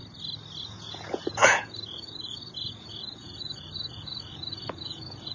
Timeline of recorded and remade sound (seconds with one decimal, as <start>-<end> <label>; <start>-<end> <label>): 0.0-0.6 recorded; 0.6-5.3 remade

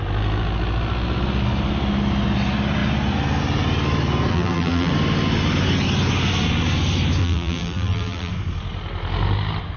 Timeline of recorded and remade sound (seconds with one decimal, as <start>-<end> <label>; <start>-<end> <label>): 0.0-4.3 recorded; 4.3-4.9 remade; 4.9-7.2 recorded; 7.2-8.3 remade; 8.3-9.8 recorded

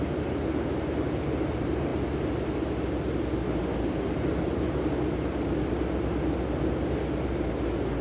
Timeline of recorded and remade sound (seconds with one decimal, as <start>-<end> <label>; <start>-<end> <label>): 0.0-8.0 recorded

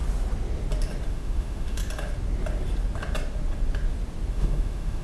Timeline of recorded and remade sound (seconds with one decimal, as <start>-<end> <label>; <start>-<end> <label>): 0.0-1.1 recorded; 1.1-1.8 remade; 1.8-4.3 recorded; 4.3-5.0 remade